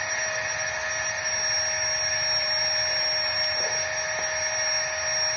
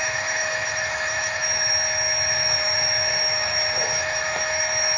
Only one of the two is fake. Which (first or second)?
second